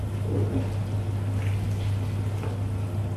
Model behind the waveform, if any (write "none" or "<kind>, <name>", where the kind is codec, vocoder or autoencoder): none